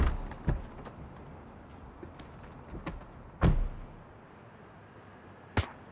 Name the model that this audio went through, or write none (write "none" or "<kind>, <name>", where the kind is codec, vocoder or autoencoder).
none